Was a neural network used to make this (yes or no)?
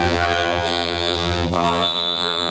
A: yes